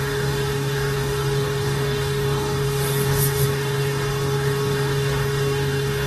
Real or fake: fake